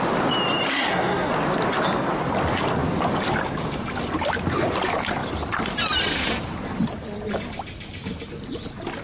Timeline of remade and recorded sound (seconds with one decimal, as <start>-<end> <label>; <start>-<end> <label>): 0.0-0.7 recorded; 0.7-1.3 remade; 1.3-9.0 recorded